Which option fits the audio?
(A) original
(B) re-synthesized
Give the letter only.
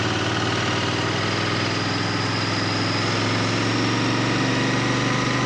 A